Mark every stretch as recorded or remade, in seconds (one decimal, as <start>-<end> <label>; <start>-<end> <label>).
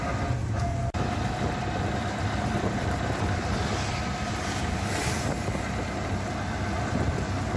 0.0-0.7 recorded; 0.7-5.2 remade; 5.2-7.6 recorded